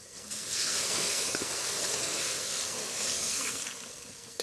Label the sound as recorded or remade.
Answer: remade